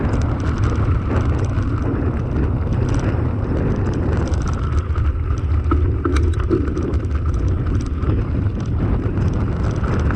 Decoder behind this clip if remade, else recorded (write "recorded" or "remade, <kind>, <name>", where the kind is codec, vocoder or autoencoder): recorded